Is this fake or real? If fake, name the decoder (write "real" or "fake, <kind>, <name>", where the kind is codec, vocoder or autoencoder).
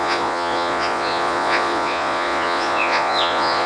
fake, vocoder, Vocos